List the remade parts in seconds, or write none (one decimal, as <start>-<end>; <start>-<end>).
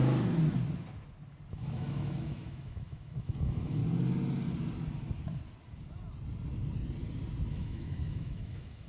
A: 1.5-3.8; 7.5-8.9